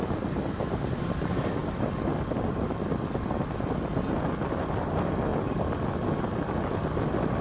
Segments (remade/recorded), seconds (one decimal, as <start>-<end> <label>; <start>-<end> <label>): 0.0-7.4 recorded

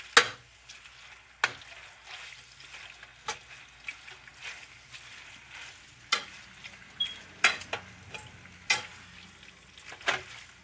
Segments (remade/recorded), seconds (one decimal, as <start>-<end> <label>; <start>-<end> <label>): 0.0-4.3 recorded; 4.3-7.6 remade; 7.6-10.6 recorded

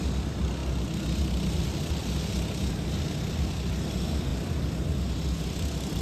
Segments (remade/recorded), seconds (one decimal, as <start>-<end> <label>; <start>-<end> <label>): 0.0-6.0 recorded

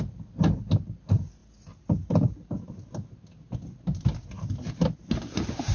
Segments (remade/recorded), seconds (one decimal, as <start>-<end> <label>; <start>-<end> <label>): 0.0-5.7 recorded

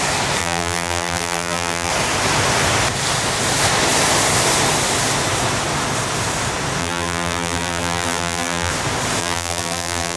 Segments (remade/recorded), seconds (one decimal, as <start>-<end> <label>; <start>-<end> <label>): 0.0-0.4 recorded; 0.4-1.9 remade; 1.9-6.8 recorded; 6.8-8.7 remade; 8.7-9.2 recorded; 9.2-10.2 remade